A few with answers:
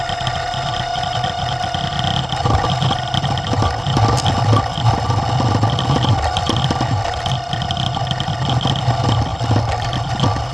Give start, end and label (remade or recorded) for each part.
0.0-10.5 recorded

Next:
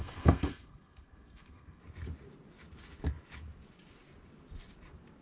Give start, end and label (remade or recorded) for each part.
0.0-1.8 remade; 1.8-5.2 recorded